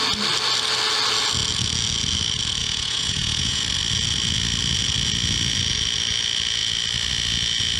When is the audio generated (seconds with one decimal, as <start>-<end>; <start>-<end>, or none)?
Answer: 2.6-3.6